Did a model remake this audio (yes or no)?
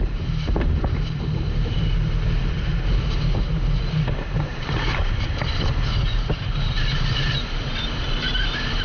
yes